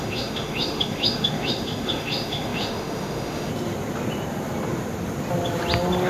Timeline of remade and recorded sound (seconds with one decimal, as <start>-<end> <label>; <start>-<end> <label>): 0.0-3.5 remade; 3.5-6.1 recorded